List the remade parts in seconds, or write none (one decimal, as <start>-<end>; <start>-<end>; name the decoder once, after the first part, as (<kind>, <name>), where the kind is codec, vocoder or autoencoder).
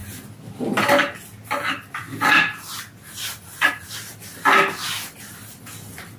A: none